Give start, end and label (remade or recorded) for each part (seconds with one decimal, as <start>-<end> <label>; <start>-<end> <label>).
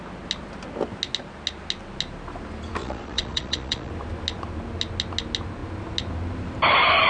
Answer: 0.0-2.8 recorded; 2.8-3.9 remade; 3.9-7.1 recorded